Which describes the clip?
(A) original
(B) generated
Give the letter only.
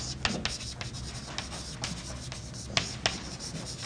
A